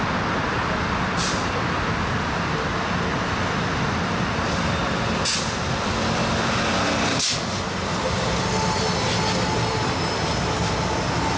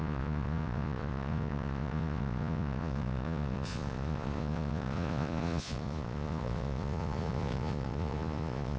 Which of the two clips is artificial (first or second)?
second